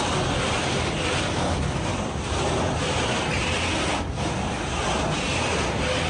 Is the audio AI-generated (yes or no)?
no